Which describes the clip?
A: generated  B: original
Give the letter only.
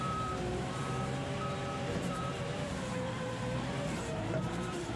A